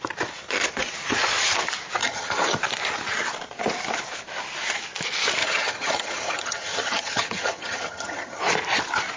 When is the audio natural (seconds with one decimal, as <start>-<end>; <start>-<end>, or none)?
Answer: 0.0-2.0; 2.6-5.4; 8.4-9.2